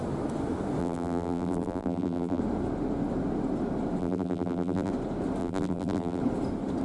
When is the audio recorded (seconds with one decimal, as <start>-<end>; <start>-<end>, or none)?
0.0-0.8; 2.4-4.0; 4.9-5.4; 6.2-6.8